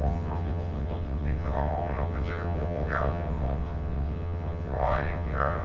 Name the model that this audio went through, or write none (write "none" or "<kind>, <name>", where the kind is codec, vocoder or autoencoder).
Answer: vocoder, WaveNeXt